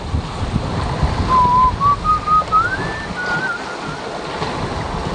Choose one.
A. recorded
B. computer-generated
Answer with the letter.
A